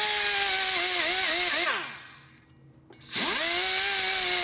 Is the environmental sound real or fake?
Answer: real